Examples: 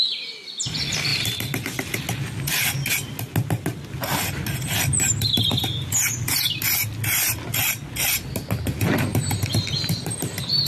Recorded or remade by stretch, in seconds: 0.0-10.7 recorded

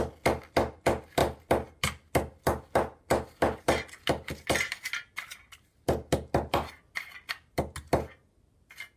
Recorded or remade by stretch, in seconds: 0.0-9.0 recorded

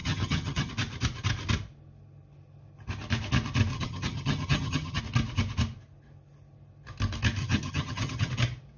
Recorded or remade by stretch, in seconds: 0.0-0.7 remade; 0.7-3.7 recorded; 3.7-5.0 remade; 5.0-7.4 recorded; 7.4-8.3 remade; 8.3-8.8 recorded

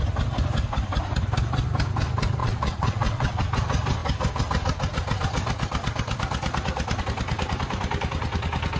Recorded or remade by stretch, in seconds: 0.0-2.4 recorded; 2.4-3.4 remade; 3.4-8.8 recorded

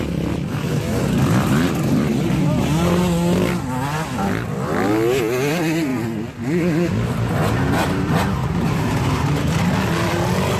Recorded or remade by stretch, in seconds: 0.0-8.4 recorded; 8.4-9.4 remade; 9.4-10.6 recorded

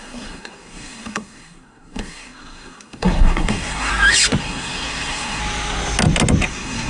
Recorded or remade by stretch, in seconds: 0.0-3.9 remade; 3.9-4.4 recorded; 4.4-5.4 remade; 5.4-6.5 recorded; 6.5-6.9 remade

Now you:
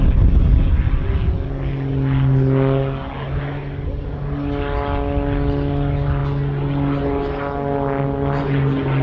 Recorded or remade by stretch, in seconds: 0.0-9.0 recorded